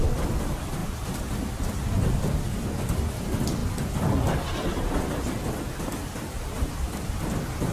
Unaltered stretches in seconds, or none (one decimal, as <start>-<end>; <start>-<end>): 0.0-7.7